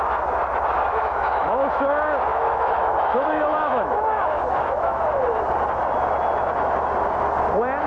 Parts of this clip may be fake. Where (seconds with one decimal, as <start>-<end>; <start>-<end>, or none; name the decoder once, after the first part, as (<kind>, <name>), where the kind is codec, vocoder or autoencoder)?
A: 0.9-1.8 (autoencoder, DAC-VAE); 2.3-5.2